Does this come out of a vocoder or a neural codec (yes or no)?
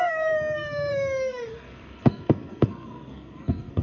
yes